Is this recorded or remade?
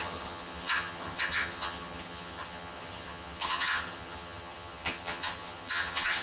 remade